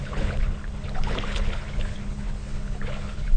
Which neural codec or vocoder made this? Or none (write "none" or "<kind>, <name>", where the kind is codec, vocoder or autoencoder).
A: codec, HILCodec